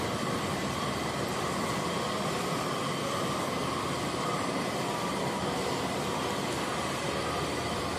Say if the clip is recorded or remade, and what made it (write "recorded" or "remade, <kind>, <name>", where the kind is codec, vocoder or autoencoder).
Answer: remade, vocoder, BigVGAN v2